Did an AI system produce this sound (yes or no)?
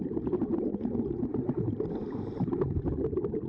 no